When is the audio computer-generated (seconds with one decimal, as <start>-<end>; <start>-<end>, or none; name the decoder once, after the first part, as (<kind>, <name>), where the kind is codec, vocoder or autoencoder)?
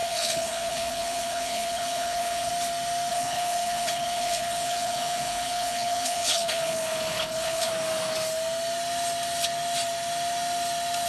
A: 0.0-2.5 (codec, HILCodec); 3.1-7.7